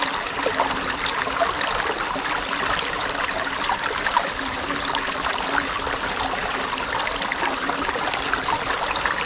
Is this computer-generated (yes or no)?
no